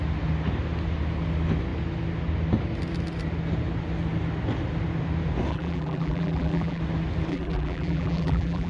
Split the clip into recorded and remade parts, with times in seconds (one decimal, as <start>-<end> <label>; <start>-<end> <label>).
0.0-5.5 recorded; 5.5-6.8 remade; 6.8-7.3 recorded; 7.3-8.7 remade